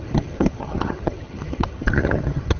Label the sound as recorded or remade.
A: remade